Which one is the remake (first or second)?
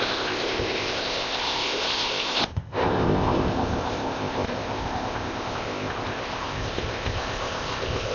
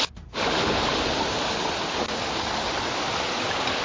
first